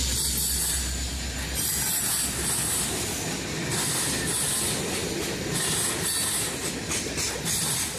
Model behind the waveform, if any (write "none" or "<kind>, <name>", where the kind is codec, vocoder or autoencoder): none